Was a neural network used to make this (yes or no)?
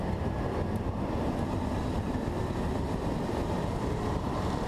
no